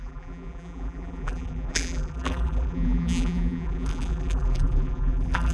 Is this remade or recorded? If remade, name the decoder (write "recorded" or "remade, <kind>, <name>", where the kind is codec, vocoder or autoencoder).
remade, vocoder, BigVGAN v2